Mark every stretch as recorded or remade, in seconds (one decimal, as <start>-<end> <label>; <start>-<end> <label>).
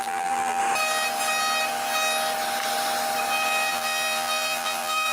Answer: 0.0-0.6 remade; 0.6-3.7 recorded; 3.7-5.1 remade